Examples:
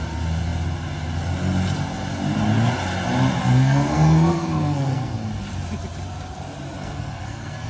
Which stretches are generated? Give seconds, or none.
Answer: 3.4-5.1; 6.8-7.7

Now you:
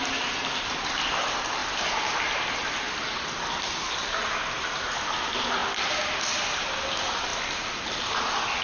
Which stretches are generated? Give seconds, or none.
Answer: none

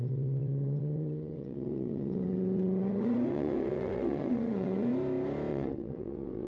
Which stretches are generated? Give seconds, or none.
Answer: 0.0-4.9; 5.5-6.5